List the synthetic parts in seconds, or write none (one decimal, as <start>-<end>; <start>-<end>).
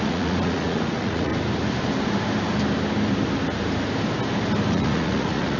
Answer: 0.0-1.3; 4.7-5.6